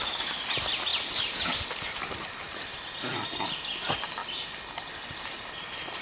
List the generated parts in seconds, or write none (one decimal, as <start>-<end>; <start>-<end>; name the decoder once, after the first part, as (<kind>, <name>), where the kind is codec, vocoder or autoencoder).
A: none